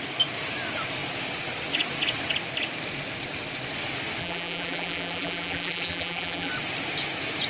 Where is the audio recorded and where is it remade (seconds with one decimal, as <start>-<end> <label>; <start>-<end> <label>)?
0.0-4.2 recorded; 4.2-6.5 remade; 6.5-7.5 recorded